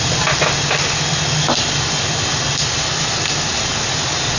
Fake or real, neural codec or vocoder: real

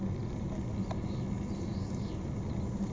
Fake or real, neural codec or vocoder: real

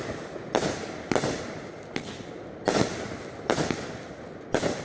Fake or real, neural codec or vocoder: real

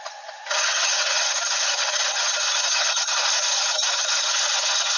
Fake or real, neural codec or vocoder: fake, vocoder, HiFi-GAN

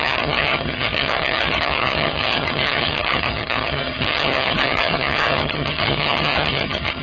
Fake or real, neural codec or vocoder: fake, vocoder, HiFi-GAN